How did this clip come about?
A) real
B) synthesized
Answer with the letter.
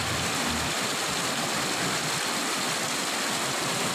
A